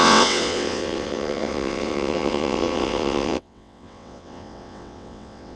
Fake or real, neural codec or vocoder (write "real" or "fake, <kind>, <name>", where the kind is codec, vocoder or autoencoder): fake, vocoder, WaveNeXt